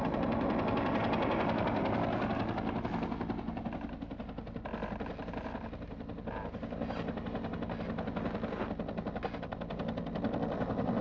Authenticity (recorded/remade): recorded